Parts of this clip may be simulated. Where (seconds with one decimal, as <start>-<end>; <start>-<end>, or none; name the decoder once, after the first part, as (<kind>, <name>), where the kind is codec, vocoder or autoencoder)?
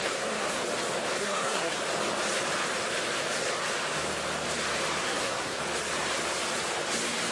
0.0-0.6 (codec, SNAC); 1.2-1.8; 5.0-5.6